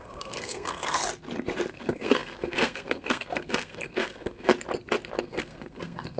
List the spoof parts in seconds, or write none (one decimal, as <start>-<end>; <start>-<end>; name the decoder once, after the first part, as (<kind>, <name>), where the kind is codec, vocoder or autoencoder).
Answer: 0.0-1.0 (codec, SNAC); 1.7-4.5; 5.2-6.2